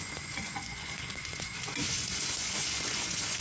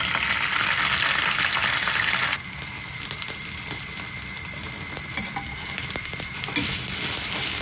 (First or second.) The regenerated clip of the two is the first